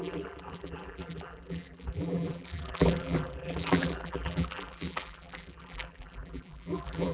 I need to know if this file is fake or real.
fake